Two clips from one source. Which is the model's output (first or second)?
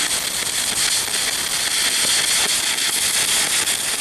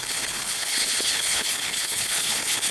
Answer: second